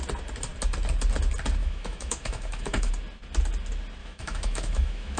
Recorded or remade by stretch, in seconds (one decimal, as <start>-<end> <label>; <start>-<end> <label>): 0.0-1.6 recorded; 1.6-2.9 remade; 2.9-4.0 recorded; 4.0-5.2 remade